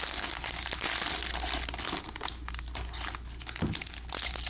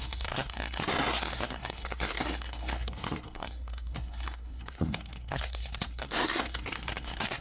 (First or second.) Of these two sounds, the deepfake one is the second